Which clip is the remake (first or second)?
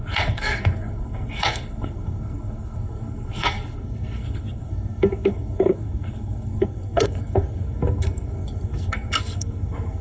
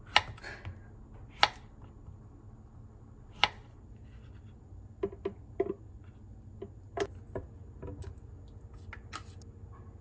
first